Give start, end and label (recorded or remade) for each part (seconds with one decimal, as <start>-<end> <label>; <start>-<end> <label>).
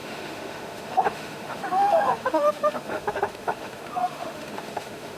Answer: 0.0-5.2 remade